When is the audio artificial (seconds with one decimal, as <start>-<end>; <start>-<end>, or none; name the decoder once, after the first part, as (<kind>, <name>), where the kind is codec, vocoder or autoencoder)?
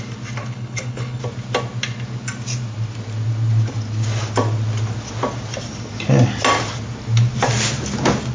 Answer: 0.4-1.2 (codec, HILCodec)